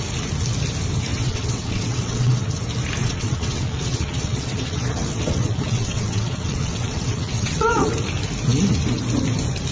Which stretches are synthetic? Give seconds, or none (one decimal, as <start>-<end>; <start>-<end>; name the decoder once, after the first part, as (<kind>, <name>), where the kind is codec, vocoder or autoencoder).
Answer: 1.1-2.5 (vocoder, WaveNeXt); 3.0-7.9